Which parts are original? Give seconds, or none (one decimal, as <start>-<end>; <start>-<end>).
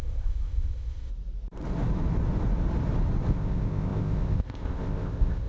1.1-3.3